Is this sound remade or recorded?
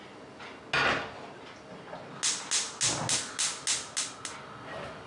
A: recorded